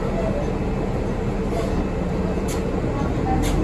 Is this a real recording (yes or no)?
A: yes